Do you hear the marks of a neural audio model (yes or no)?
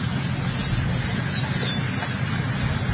no